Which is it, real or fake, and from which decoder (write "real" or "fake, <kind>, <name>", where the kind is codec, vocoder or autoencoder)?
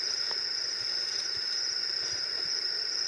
real